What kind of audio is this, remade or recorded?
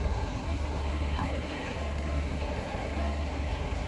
remade